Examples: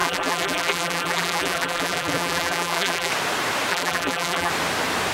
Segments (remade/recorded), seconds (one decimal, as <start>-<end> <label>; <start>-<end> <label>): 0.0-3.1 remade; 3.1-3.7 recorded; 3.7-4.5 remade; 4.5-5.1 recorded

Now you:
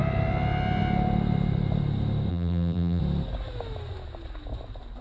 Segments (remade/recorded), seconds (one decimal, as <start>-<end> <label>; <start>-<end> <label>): 0.0-2.3 recorded; 2.3-3.0 remade; 3.0-5.0 recorded

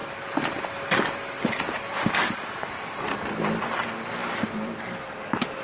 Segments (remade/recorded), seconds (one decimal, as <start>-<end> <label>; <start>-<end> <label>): 0.0-3.2 remade; 3.2-4.2 recorded; 4.2-5.1 remade; 5.1-5.6 recorded

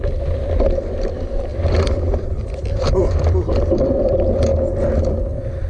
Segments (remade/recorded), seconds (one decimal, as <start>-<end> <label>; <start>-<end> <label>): 0.0-4.5 remade; 4.5-5.7 recorded

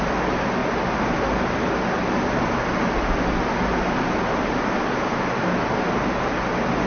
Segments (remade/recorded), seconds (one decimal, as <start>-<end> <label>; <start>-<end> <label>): 0.0-0.6 remade; 0.6-4.4 recorded; 4.4-5.1 remade; 5.1-6.9 recorded

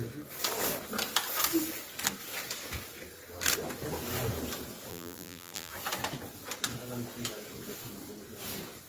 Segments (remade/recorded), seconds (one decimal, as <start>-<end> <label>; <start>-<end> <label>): 0.0-4.9 recorded; 4.9-5.7 remade; 5.7-8.9 recorded